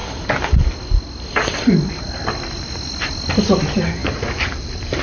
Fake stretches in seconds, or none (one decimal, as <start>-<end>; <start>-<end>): 4.0-5.0